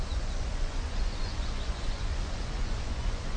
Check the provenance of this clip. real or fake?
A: fake